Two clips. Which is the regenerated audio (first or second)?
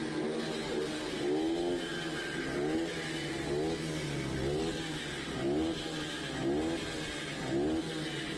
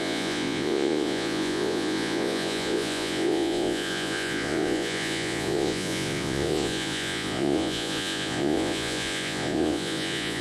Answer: second